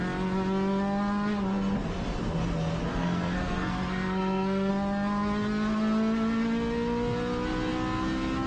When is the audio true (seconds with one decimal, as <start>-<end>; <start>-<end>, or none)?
0.0-2.9; 4.7-8.5